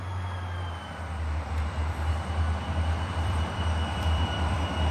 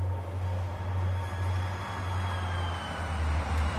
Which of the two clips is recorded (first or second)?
second